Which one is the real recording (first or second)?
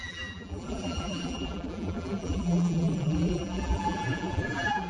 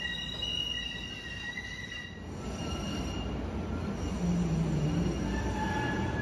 second